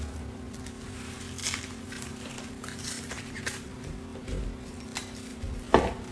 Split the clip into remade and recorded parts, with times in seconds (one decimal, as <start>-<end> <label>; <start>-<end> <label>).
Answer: 0.0-1.4 recorded; 1.4-3.4 remade; 3.4-5.3 recorded; 5.3-6.1 remade